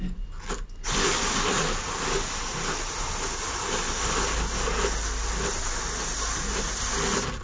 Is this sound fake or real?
real